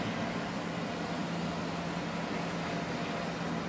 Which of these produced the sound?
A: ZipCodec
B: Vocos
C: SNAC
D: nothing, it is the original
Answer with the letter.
D